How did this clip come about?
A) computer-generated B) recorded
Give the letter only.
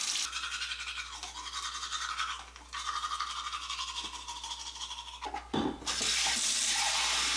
B